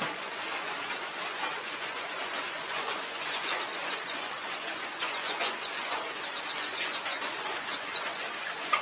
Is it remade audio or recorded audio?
remade